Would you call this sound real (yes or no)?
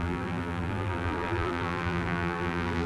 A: no